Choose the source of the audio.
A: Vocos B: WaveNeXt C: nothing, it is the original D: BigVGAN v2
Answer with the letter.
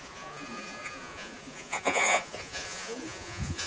A